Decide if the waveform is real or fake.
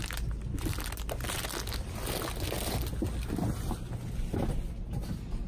real